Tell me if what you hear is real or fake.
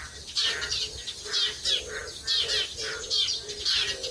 real